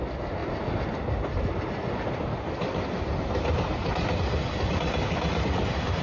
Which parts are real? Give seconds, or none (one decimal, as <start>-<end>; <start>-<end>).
0.0-6.0